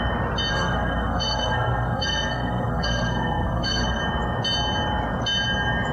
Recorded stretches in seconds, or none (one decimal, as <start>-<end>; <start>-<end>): 0.0-0.5; 4.0-5.9